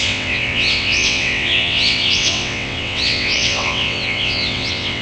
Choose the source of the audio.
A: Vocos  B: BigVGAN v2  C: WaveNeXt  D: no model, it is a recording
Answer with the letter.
C